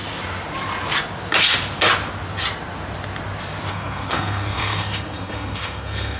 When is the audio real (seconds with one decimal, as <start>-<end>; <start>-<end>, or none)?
0.0-3.7